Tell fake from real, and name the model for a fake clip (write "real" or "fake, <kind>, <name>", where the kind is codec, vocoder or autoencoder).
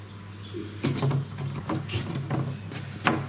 real